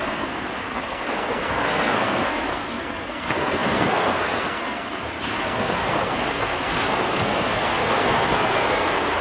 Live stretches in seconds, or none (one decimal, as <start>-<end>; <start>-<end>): none